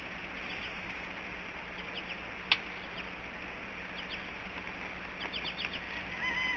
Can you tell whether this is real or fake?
real